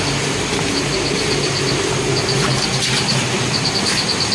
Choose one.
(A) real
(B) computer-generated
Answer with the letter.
A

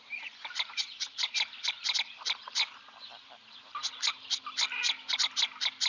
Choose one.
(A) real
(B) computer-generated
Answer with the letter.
A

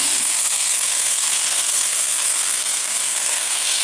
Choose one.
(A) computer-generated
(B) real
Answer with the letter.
A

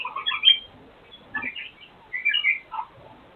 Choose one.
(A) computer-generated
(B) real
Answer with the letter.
B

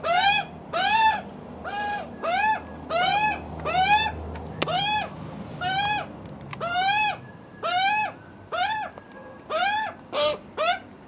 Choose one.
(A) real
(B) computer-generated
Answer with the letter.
A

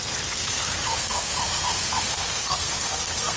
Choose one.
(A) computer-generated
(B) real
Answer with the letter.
A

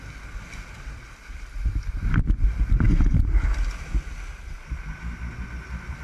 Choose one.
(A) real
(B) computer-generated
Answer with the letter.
A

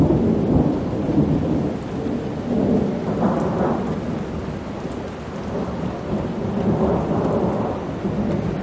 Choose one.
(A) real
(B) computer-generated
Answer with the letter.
A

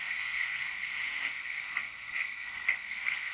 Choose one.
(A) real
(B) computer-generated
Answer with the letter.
B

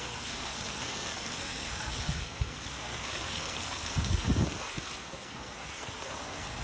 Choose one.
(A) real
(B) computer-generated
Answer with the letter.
B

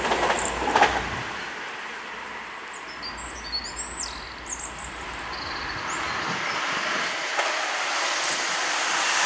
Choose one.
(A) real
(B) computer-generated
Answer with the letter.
A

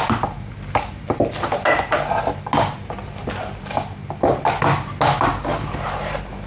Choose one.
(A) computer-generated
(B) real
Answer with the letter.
B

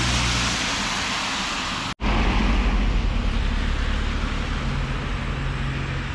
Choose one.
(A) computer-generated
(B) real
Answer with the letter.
B